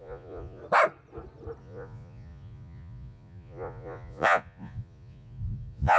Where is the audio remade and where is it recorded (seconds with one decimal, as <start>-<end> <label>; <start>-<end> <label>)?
0.0-0.6 remade; 0.6-1.6 recorded; 1.6-6.0 remade